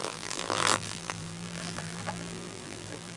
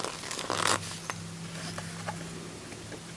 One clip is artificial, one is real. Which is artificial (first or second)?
first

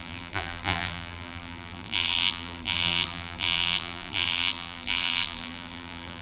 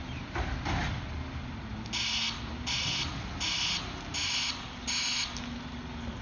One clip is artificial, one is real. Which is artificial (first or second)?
first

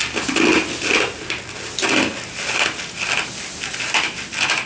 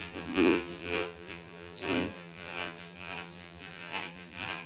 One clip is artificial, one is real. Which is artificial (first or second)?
second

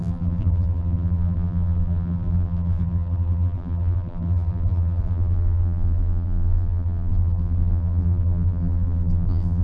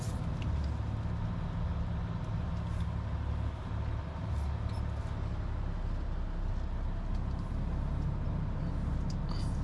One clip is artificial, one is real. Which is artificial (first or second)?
first